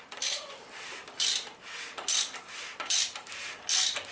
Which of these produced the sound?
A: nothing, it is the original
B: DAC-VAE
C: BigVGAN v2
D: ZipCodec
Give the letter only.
A